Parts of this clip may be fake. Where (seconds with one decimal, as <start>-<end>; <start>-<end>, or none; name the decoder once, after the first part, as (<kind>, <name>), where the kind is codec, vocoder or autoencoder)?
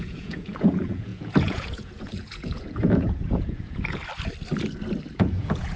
0.0-4.0 (vocoder, Vocos); 5.1-5.8